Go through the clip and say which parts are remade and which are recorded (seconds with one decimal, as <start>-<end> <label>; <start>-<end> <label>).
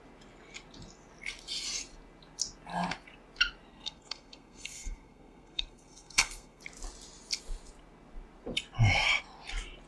0.0-3.7 recorded; 3.7-6.6 remade; 6.6-9.9 recorded